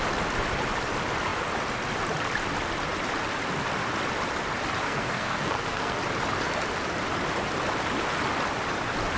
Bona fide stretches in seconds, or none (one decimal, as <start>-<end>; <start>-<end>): 0.0-4.8; 6.0-9.2